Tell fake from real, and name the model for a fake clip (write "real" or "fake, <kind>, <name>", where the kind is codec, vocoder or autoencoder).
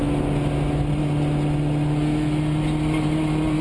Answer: real